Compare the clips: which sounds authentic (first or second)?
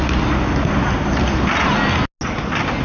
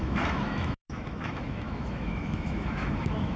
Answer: first